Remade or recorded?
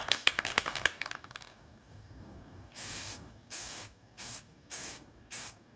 remade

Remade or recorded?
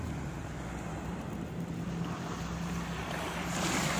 recorded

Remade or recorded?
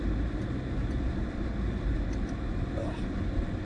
recorded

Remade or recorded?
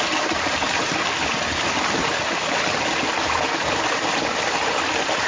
recorded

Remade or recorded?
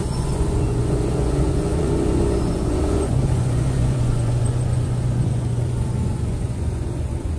remade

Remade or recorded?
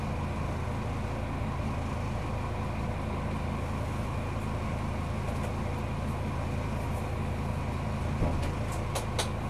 recorded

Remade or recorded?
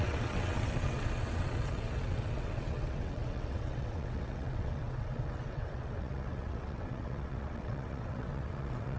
remade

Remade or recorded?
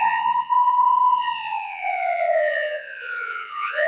remade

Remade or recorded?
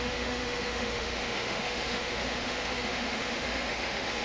remade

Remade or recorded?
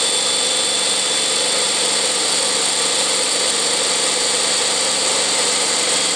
recorded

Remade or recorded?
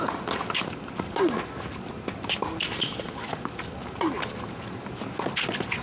recorded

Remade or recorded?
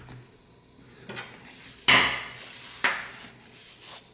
recorded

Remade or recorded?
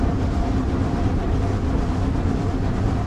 recorded